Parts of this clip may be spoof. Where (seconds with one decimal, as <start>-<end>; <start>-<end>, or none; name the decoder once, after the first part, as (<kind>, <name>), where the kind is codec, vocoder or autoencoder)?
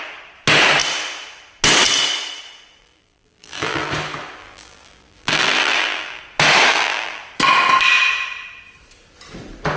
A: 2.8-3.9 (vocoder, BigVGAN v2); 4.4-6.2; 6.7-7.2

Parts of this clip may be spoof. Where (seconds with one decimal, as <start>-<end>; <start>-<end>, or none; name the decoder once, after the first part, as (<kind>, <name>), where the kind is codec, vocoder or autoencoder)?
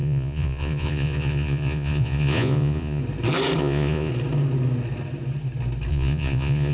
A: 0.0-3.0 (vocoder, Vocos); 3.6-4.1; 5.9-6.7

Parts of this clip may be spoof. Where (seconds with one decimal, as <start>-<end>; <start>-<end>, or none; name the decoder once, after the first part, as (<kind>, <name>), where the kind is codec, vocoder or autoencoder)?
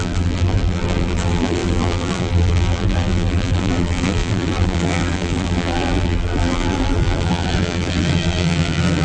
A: 0.0-9.0 (vocoder, BigVGAN v2)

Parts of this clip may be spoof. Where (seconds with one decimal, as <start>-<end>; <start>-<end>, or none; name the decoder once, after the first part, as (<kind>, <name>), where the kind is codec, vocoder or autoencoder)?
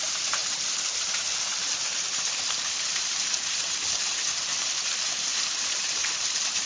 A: 0.0-6.7 (vocoder, BigVGAN v2)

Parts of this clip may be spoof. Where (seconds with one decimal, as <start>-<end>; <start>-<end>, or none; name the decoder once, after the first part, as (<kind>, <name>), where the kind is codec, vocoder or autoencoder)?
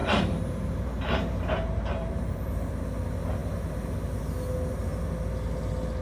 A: 0.0-2.7 (vocoder, BigVGAN v2)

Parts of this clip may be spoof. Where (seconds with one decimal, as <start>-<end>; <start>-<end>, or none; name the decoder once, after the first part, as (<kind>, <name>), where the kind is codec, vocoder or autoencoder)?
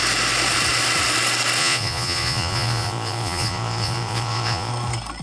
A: 1.6-4.7 (vocoder, Vocos)